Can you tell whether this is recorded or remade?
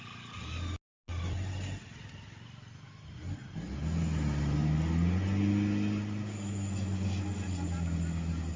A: recorded